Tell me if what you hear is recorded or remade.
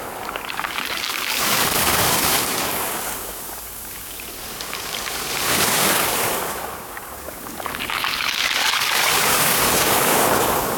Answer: remade